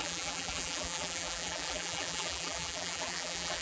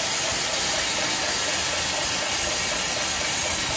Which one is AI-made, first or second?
first